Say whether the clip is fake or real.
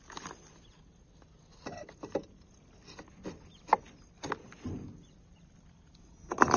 real